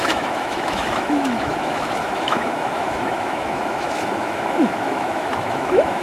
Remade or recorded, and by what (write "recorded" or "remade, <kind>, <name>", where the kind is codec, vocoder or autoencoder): remade, autoencoder, DAC-VAE